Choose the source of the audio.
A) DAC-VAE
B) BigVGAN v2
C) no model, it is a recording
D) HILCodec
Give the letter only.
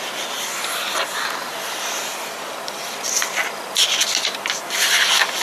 C